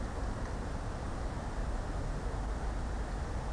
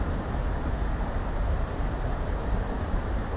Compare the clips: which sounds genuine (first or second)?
first